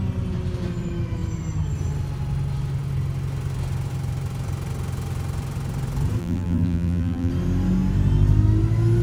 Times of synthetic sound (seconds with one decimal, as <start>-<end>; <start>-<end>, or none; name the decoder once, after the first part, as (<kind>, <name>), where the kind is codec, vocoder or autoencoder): 6.2-7.3 (vocoder, BigVGAN v2)